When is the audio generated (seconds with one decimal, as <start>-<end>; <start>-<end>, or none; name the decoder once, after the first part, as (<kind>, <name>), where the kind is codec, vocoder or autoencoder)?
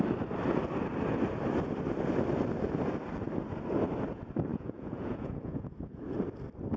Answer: 4.5-6.0 (vocoder, Vocos)